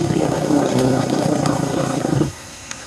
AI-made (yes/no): yes